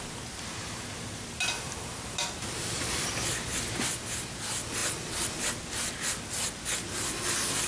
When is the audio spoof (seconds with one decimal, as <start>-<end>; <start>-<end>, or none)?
0.5-3.1